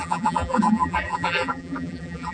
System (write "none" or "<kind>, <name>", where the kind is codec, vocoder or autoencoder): vocoder, BigVGAN v2